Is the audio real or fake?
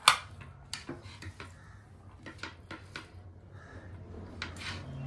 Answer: real